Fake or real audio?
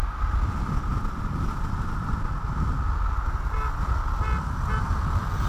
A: real